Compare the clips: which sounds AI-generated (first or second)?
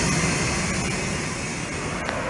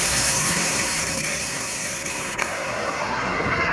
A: second